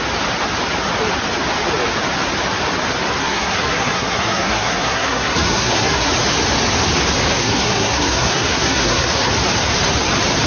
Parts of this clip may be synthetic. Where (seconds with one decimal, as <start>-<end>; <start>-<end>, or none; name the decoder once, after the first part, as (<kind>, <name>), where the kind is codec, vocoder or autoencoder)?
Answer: 3.2-6.1 (codec, SNAC); 7.4-9.3